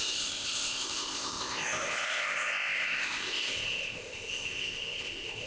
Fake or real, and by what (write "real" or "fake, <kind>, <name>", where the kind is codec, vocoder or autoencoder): fake, codec, ZipCodec